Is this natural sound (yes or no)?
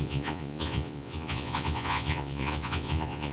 no